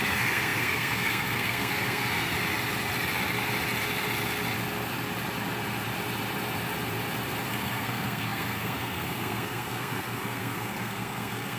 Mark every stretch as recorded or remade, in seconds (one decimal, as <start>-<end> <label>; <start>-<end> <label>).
0.0-2.3 remade; 2.3-7.5 recorded; 7.5-11.6 remade